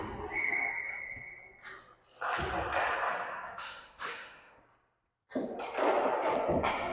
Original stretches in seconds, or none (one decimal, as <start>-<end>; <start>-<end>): 0.0-3.1; 4.6-6.9